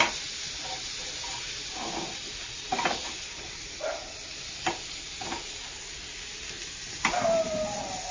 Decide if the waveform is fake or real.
real